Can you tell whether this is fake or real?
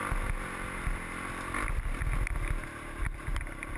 real